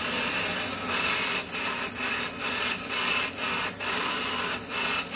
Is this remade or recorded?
recorded